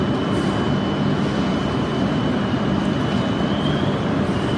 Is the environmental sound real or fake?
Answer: real